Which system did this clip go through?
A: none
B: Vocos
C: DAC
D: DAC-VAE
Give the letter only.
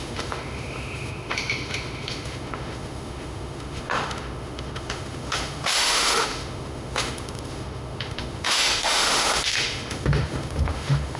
D